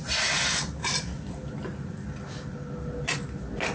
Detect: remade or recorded recorded